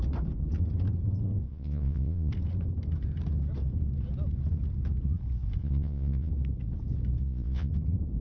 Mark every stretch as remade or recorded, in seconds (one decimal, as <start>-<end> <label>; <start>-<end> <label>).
0.0-1.5 recorded; 1.5-2.3 remade; 2.3-5.6 recorded; 5.6-6.3 remade; 6.3-7.2 recorded; 7.2-7.7 remade; 7.7-8.2 recorded